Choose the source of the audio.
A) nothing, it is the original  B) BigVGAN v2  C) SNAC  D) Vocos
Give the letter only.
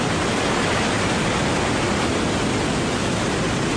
A